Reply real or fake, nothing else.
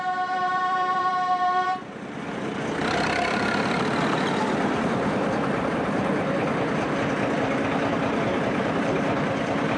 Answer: fake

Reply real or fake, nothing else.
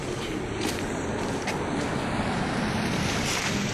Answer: fake